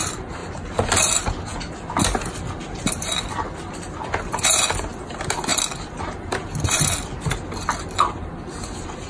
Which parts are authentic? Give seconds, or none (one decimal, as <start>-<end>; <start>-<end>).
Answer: 0.0-9.1